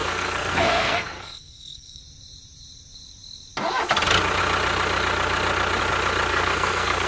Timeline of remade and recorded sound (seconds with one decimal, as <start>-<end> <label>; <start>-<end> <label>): 0.0-2.0 remade; 2.0-6.3 recorded; 6.3-7.1 remade